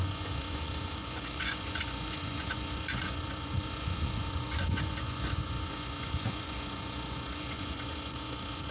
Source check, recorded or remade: remade